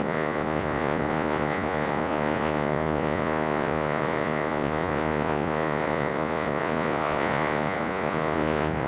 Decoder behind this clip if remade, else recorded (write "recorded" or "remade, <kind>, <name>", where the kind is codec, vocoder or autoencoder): remade, vocoder, Vocos